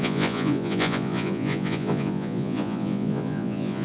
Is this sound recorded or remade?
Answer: remade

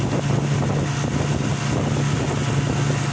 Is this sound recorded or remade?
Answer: recorded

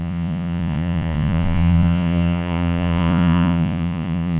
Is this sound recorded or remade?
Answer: remade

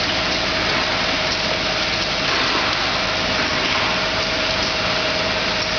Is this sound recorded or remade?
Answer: recorded